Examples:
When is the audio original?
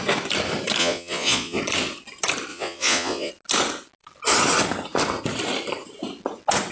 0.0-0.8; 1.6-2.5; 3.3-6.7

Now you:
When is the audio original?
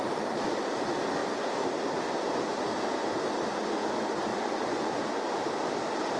0.0-4.3; 4.9-6.2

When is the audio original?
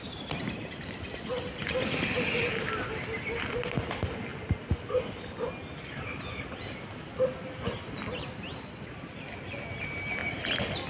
0.0-10.9